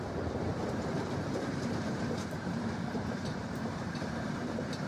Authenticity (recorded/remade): remade